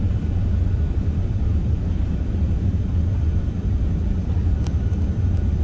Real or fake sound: fake